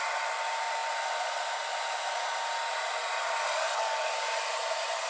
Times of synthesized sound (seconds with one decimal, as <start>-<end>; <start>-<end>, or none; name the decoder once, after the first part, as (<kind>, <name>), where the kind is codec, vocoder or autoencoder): none